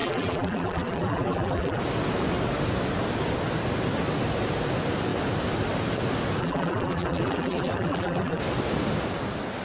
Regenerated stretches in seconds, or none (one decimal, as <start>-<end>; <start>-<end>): 0.0-1.8; 6.4-8.4